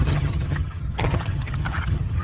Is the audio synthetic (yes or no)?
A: yes